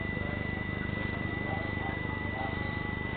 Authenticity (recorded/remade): remade